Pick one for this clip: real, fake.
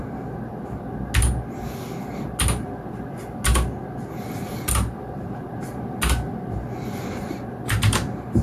real